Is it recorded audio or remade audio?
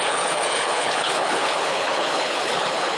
remade